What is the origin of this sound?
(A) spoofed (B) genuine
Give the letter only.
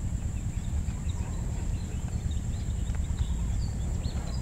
A